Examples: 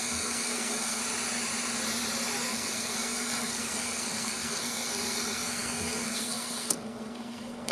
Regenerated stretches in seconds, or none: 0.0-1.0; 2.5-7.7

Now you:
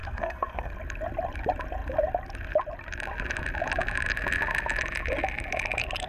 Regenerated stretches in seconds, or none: 0.0-0.7